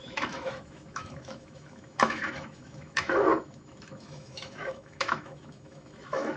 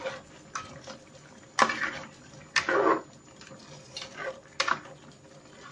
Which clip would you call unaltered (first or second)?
second